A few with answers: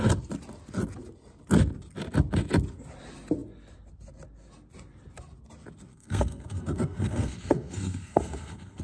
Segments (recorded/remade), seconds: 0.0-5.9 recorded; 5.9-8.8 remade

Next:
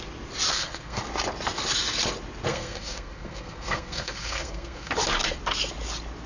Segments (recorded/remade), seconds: 0.0-0.5 recorded; 0.5-1.0 remade; 1.0-2.5 recorded; 2.5-4.9 remade; 4.9-6.3 recorded

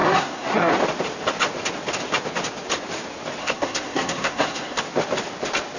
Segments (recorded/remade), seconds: 0.0-0.7 remade; 0.7-3.4 recorded; 3.4-4.8 remade; 4.8-5.8 recorded

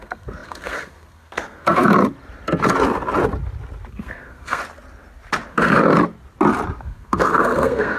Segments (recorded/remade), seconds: 0.0-1.9 remade; 1.9-3.9 recorded; 3.9-4.6 remade; 4.6-5.5 recorded; 5.5-5.9 remade; 5.9-6.8 recorded; 6.8-8.0 remade